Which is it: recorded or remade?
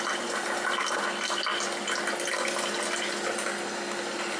recorded